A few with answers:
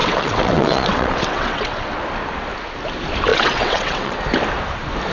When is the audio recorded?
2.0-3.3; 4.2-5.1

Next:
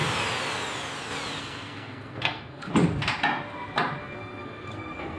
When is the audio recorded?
0.0-1.4; 2.7-4.0

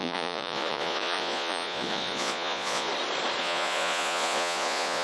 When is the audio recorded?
2.9-3.4